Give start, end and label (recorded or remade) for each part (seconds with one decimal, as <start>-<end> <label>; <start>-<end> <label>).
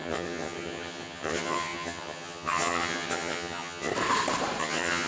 0.0-3.9 remade; 3.9-4.6 recorded; 4.6-5.1 remade